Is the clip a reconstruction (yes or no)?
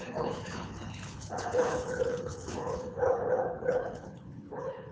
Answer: yes